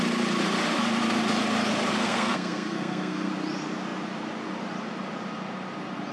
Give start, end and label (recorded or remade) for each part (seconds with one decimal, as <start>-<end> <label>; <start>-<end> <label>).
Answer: 0.0-2.0 recorded; 2.0-3.3 remade; 3.3-6.1 recorded